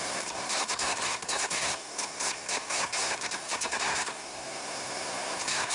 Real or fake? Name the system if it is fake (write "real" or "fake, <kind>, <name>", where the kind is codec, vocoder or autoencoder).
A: fake, codec, SNAC